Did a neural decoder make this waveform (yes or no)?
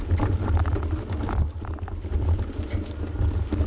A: no